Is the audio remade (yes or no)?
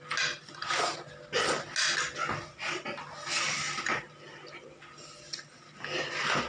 no